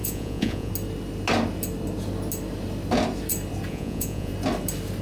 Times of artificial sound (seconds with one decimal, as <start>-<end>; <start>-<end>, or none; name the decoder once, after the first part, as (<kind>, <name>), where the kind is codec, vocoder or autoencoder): 0.0-0.7 (vocoder, Vocos); 3.7-4.3